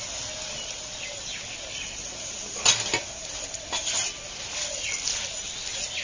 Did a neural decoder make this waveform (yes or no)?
no